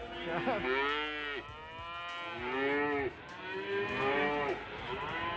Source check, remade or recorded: recorded